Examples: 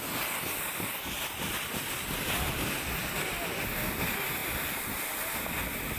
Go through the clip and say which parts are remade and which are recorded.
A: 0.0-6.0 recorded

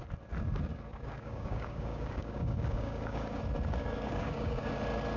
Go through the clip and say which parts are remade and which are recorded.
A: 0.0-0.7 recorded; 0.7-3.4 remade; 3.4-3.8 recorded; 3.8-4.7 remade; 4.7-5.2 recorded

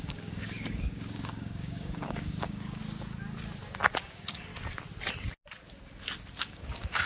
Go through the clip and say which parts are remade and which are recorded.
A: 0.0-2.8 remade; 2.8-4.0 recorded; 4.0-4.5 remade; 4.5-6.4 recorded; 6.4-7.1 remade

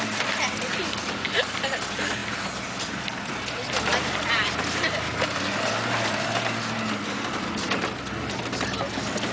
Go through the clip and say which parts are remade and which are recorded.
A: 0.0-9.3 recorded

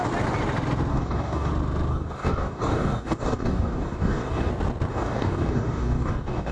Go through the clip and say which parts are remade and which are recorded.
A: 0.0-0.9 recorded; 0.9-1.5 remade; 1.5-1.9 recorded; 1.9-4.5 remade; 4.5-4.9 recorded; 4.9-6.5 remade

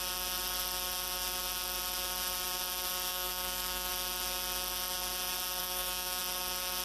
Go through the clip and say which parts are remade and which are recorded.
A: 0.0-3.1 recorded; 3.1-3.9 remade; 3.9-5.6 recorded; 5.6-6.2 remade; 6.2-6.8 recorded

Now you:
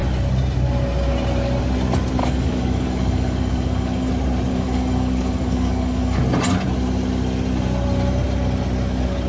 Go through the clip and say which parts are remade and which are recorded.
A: 0.0-2.2 recorded; 2.2-4.1 remade; 4.1-4.5 recorded; 4.5-6.2 remade; 6.2-9.3 recorded

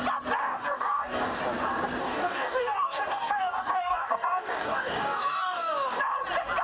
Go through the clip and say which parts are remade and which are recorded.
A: 0.0-0.4 recorded; 0.4-1.4 remade; 1.4-2.0 recorded; 2.0-6.0 remade; 6.0-6.6 recorded